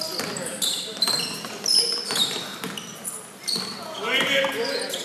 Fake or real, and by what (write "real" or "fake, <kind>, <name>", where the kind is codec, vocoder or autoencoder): real